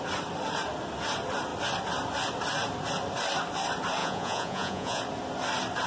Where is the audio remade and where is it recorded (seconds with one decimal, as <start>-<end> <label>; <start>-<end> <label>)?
0.0-4.0 recorded; 4.0-5.0 remade; 5.0-5.9 recorded